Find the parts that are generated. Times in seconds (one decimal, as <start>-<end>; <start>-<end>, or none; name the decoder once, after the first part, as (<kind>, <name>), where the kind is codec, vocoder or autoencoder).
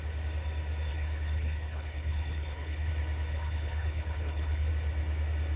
0.9-2.9 (codec, HILCodec); 3.3-4.7